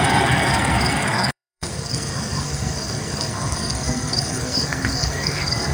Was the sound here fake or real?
fake